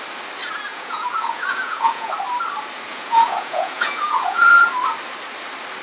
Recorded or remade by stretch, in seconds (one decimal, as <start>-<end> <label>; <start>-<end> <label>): 0.0-0.7 recorded; 0.7-2.1 remade; 2.1-2.9 recorded; 2.9-4.7 remade; 4.7-5.8 recorded